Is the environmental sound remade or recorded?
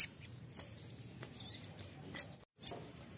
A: recorded